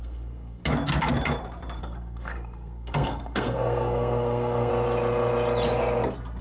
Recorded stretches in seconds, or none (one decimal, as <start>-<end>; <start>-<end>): 0.6-1.8; 4.7-6.4